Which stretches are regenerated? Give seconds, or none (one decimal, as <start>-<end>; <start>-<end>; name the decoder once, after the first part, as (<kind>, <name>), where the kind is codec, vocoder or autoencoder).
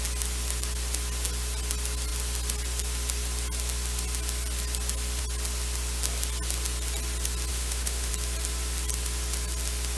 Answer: 7.5-8.1 (autoencoder, DAC-VAE)